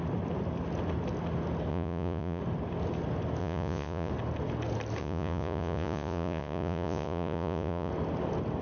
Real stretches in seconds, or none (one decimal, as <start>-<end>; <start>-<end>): 0.0-1.7; 2.4-3.4; 4.1-5.0; 7.9-8.6